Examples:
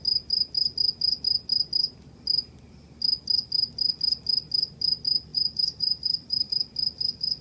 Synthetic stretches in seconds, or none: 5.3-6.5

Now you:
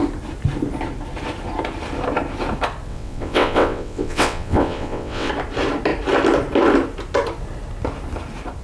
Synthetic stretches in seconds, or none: 2.9-5.3